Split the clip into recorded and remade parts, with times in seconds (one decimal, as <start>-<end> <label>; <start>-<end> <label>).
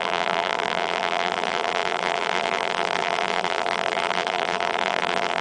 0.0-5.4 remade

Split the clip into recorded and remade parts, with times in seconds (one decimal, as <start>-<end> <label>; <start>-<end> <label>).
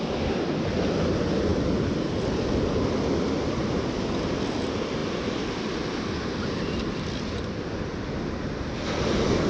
0.0-9.5 recorded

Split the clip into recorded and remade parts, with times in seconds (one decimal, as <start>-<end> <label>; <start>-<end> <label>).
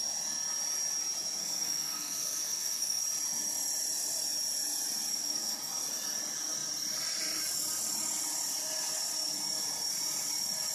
0.0-1.4 recorded; 1.4-3.0 remade; 3.0-5.1 recorded; 5.1-5.7 remade; 5.7-10.7 recorded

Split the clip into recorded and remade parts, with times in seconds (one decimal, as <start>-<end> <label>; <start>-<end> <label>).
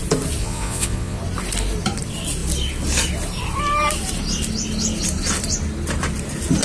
0.0-0.4 recorded; 0.4-1.2 remade; 1.2-6.6 recorded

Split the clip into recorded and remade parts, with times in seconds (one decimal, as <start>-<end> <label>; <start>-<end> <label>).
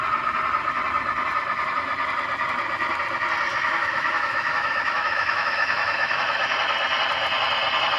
0.0-3.5 recorded; 3.5-6.4 remade; 6.4-8.0 recorded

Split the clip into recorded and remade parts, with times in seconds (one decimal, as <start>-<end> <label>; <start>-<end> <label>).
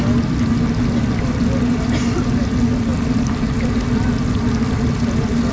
0.0-5.5 recorded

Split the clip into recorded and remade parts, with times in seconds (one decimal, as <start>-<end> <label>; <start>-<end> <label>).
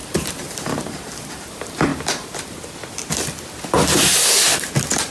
0.0-1.9 remade; 1.9-5.1 recorded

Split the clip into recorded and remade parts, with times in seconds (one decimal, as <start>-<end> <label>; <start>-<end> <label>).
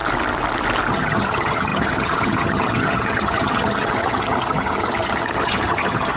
0.0-0.9 recorded; 0.9-6.2 remade